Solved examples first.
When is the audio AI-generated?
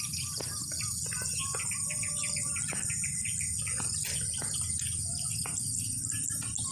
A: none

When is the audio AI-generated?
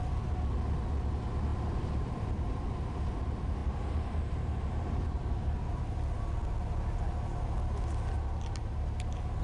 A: 1.5-2.6; 3.6-5.8